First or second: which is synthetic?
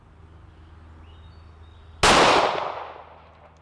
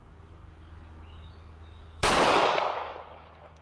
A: second